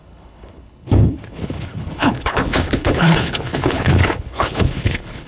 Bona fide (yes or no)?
no